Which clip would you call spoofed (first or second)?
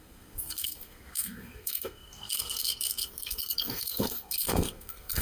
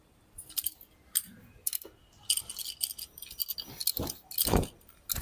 first